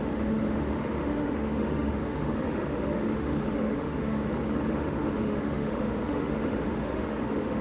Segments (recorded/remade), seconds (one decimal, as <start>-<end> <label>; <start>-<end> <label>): 0.0-4.2 remade; 4.2-4.7 recorded; 4.7-7.6 remade